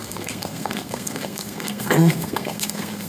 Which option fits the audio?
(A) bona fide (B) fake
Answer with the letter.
B